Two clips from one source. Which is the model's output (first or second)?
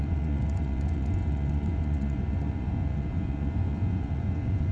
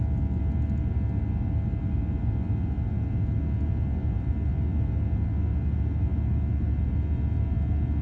first